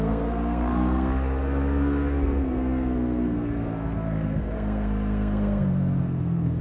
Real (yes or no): no